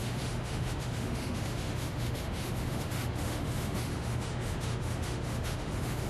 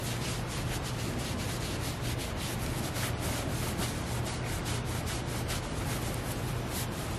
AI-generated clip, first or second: first